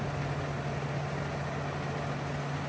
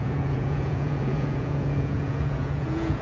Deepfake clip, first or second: second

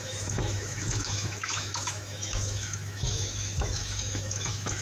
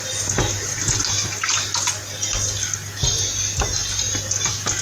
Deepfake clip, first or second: first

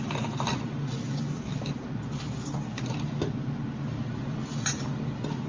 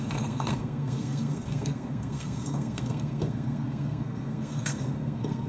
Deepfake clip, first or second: second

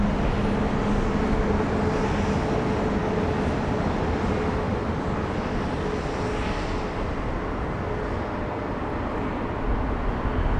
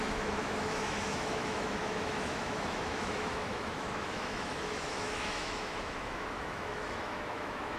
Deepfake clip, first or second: second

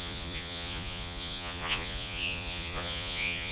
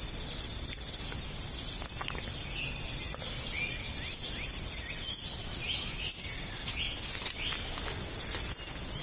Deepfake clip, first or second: first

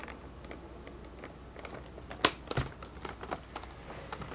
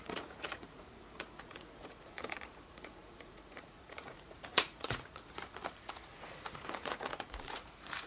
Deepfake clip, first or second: second